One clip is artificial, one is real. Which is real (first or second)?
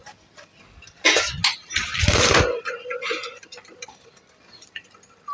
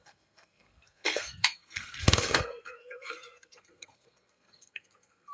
first